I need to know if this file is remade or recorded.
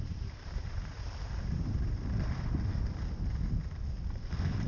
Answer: recorded